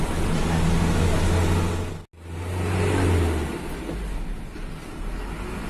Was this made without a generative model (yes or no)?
yes